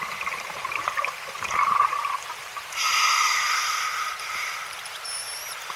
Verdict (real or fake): fake